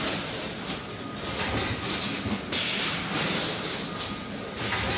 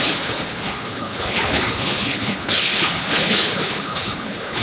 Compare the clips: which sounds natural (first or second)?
first